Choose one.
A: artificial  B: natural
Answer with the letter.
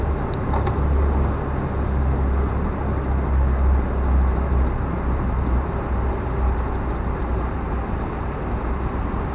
B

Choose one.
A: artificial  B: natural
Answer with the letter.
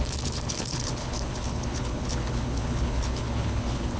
A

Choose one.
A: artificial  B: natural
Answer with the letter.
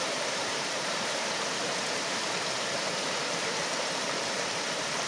A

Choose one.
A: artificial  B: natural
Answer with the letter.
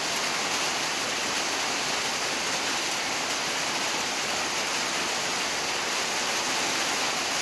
B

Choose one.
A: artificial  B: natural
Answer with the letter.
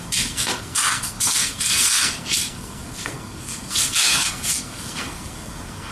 A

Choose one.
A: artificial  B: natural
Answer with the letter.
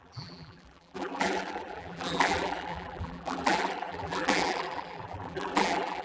A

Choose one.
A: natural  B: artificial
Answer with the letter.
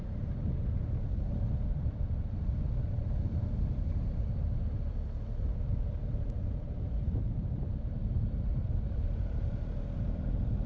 B